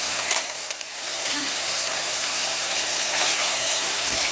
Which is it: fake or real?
fake